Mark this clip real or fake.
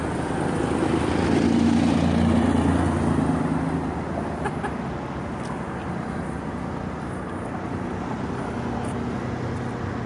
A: real